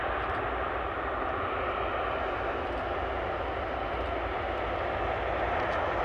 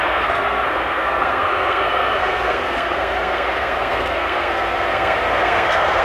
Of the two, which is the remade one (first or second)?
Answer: second